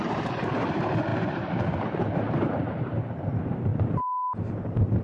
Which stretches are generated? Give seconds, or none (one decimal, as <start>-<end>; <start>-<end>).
0.0-3.7